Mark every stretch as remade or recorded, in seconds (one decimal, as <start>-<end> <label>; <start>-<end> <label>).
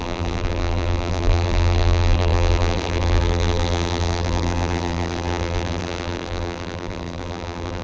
0.0-7.8 remade